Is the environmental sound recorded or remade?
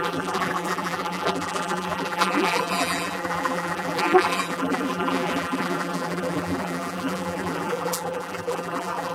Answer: remade